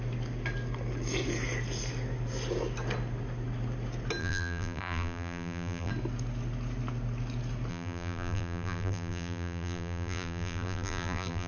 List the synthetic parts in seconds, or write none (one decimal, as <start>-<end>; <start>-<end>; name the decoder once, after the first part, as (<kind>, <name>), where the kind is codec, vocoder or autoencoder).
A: 4.2-5.9 (vocoder, BigVGAN v2); 7.7-11.5